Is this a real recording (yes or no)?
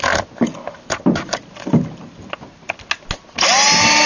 yes